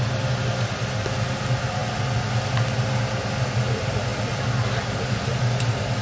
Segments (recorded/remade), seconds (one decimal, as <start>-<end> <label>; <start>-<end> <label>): 0.0-6.0 recorded

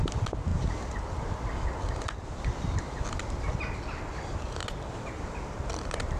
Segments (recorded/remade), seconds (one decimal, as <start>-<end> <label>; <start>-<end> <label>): 0.0-6.2 recorded

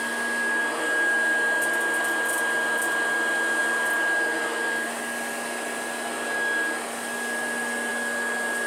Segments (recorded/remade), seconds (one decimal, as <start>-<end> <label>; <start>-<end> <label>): 0.0-8.7 recorded

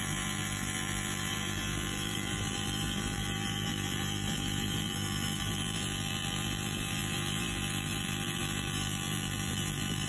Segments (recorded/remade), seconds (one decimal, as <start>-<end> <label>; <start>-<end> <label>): 0.0-10.1 remade

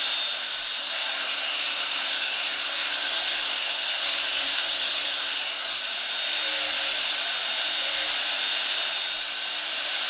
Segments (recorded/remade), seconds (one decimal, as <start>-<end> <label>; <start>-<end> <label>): 0.0-0.8 recorded; 0.8-5.8 remade; 5.8-10.1 recorded